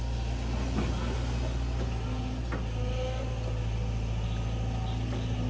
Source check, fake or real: real